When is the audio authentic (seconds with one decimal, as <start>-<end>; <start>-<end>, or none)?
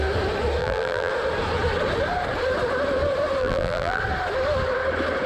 0.0-0.6; 1.1-3.4; 4.0-5.3